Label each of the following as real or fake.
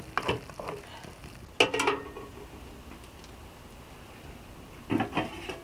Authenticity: real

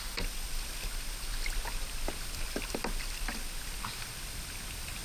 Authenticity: real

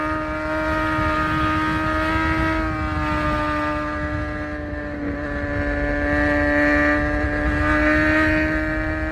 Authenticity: real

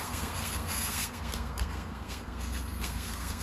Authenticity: fake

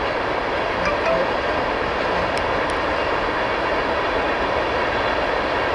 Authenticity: real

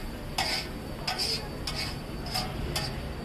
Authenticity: real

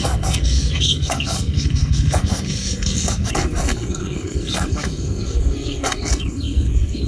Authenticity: fake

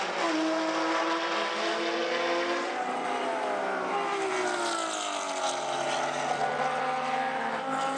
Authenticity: real